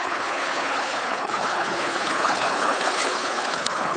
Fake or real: fake